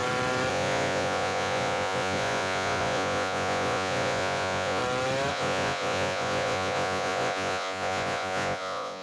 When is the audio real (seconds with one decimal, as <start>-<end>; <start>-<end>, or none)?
0.0-0.5; 4.8-5.3